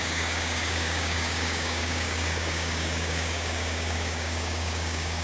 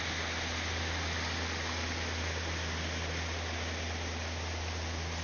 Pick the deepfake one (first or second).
first